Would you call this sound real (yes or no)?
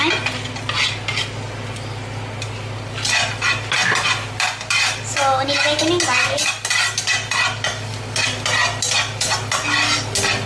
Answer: yes